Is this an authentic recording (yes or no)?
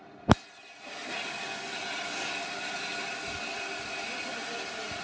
yes